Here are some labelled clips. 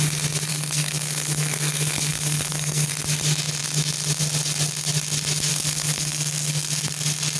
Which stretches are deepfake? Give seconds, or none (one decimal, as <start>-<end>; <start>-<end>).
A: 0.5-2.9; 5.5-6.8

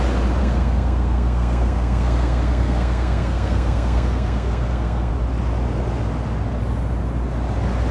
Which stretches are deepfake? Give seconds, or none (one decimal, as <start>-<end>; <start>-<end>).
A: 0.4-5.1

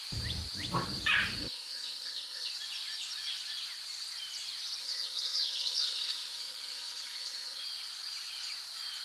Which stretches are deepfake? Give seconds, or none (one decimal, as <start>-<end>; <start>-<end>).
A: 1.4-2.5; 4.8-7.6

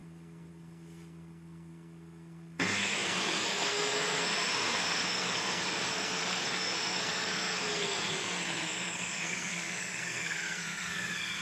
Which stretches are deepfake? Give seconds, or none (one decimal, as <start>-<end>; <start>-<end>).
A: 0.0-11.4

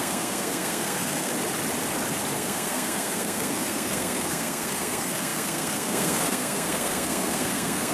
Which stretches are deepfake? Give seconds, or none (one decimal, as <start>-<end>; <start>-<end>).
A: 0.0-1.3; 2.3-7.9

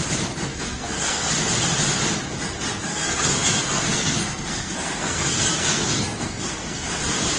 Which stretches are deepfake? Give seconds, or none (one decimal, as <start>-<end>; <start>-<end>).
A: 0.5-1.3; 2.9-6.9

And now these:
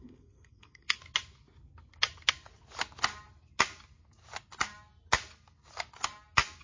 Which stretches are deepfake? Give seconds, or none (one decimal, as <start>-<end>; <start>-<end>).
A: 0.0-1.0

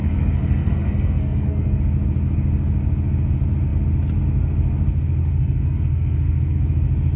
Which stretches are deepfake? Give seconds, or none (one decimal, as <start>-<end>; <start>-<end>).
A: 0.0-1.8; 5.2-6.6